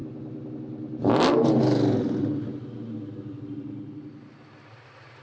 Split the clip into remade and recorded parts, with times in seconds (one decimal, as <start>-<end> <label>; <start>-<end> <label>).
0.0-5.2 recorded